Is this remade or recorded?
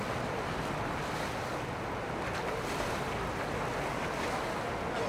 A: recorded